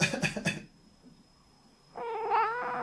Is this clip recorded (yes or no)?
yes